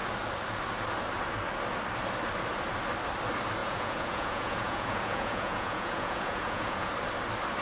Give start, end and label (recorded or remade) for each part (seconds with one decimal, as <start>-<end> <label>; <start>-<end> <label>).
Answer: 0.0-3.6 recorded; 3.6-6.9 remade; 6.9-7.6 recorded